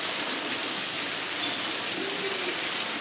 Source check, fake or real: real